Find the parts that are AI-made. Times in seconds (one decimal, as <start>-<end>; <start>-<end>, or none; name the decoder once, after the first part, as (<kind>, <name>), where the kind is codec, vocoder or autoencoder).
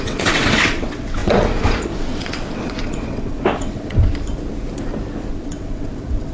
0.0-4.1 (vocoder, WaveNeXt); 5.3-6.3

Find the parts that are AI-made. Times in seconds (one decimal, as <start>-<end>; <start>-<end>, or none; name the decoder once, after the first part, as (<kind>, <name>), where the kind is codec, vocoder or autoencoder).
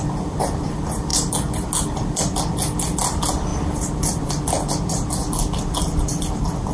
none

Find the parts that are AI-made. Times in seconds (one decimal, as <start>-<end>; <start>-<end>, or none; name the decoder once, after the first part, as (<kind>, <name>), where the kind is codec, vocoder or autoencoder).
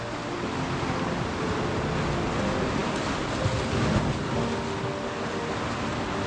none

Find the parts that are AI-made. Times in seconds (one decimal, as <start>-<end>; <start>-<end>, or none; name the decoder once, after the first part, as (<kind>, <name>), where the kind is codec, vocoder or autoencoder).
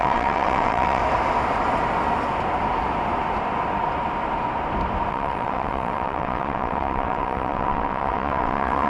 0.0-1.0 (vocoder, WaveNeXt); 5.1-8.9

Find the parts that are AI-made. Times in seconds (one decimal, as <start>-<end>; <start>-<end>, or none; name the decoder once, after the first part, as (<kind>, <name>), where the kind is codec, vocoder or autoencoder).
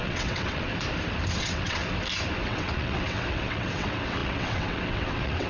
0.0-0.7 (vocoder, WaveNeXt); 1.4-1.8; 2.4-5.5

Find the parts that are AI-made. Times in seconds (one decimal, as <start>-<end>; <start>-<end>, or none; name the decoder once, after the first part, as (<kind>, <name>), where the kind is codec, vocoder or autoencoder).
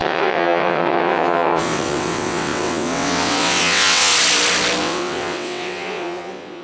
0.0-4.1 (vocoder, WaveNeXt); 4.8-6.6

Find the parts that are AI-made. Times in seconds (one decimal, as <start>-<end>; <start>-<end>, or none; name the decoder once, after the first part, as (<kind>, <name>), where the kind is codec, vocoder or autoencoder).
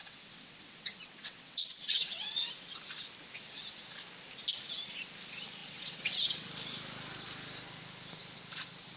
0.0-2.5 (vocoder, WaveNeXt); 5.6-6.5